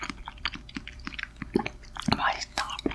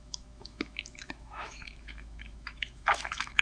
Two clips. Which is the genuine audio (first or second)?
first